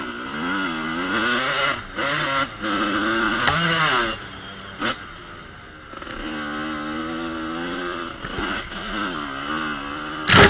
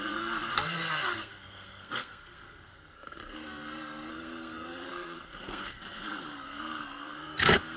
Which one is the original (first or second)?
first